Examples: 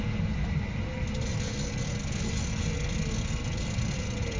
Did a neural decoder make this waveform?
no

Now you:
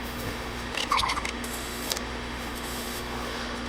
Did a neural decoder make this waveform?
yes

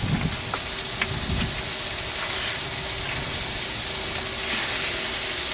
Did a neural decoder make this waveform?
no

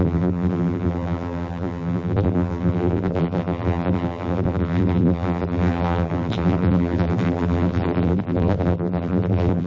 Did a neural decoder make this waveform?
yes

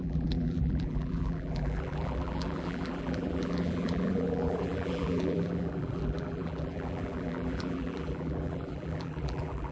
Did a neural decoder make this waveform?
yes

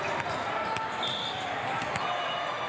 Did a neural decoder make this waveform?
no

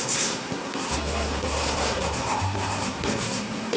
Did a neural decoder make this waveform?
yes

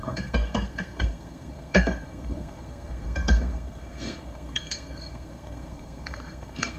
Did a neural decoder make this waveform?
yes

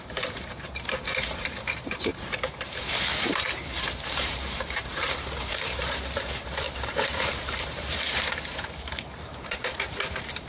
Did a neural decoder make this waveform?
yes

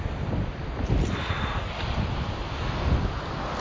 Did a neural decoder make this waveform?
no